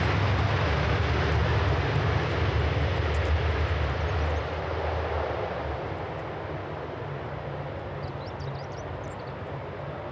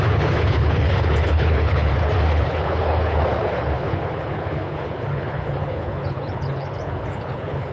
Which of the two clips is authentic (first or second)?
first